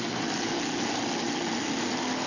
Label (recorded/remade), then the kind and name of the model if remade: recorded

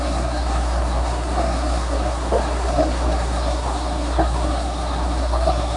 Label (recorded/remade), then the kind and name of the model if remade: remade, codec, SNAC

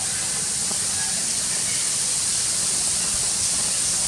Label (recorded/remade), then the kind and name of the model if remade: recorded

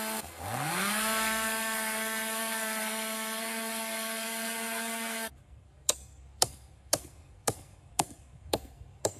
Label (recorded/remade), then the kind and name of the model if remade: remade, codec, SNAC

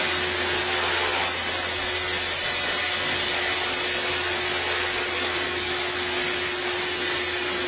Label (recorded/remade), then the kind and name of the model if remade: recorded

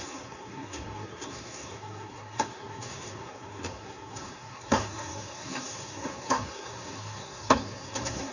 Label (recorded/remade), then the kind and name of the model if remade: remade, codec, SNAC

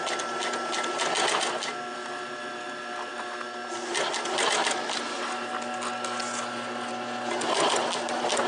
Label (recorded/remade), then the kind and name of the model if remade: recorded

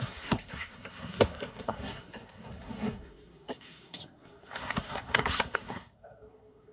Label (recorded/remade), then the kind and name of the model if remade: remade, codec, SNAC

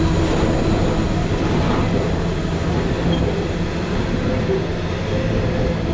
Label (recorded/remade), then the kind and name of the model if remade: recorded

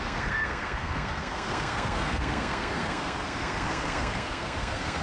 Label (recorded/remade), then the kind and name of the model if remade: remade, codec, SNAC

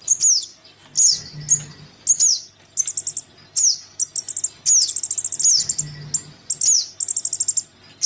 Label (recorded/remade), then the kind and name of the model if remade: recorded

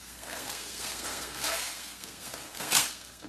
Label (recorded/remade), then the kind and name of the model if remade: remade, codec, SNAC